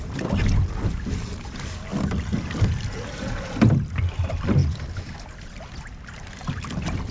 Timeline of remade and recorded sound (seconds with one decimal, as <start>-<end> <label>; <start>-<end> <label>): 0.0-7.1 recorded